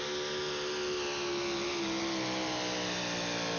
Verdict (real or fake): real